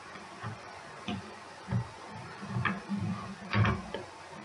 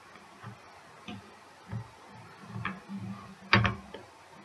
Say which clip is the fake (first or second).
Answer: first